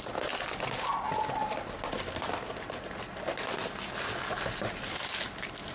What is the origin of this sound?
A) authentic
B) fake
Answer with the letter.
A